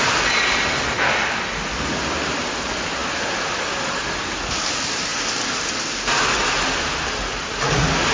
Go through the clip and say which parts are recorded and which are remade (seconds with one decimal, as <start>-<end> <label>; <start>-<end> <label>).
0.0-8.1 recorded